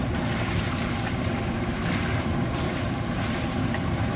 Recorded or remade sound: remade